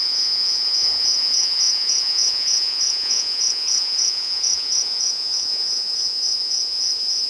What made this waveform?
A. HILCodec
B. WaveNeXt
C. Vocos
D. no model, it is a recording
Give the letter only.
C